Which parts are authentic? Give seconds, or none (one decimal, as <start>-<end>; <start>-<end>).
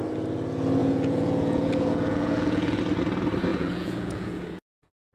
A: 0.0-0.8; 2.8-3.5